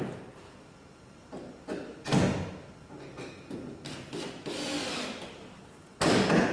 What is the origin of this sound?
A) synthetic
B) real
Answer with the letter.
B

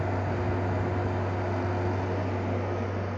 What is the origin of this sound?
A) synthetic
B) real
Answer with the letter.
B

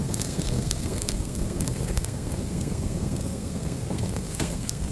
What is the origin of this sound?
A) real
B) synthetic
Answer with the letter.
B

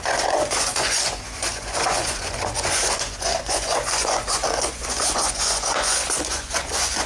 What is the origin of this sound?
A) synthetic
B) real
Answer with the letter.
A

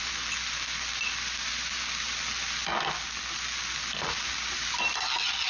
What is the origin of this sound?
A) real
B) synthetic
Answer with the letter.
A